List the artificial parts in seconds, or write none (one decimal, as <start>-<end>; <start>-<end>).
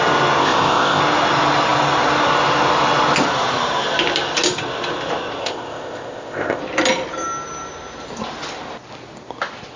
0.4-1.0; 5.4-6.6